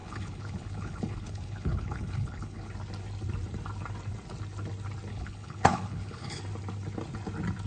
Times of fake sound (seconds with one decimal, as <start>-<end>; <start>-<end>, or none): 0.0-2.7; 5.1-6.4